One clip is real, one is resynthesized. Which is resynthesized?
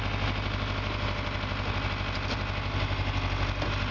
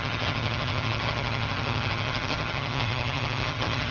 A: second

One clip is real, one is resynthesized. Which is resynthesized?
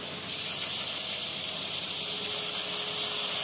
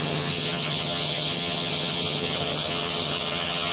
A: second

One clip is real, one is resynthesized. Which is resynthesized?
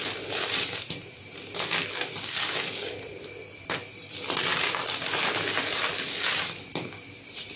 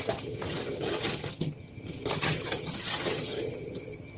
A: second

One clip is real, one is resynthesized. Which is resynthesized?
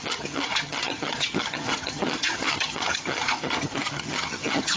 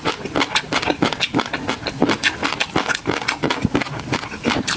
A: first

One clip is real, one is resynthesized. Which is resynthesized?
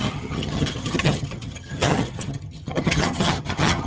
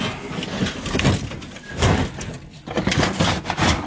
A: first